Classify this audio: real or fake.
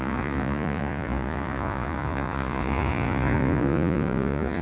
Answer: fake